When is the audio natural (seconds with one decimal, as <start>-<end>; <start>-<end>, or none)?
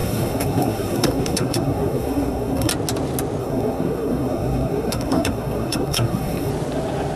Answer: 2.7-3.4; 6.5-7.2